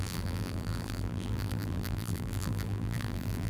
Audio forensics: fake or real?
fake